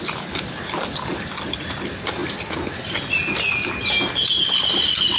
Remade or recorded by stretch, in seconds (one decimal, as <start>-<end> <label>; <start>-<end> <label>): 0.0-5.2 recorded